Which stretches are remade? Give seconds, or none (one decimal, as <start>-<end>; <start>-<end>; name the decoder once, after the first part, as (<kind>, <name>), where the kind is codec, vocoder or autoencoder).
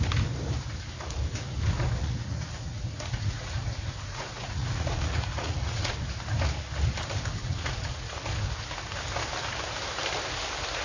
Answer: 2.0-5.9 (vocoder, Vocos); 7.4-8.2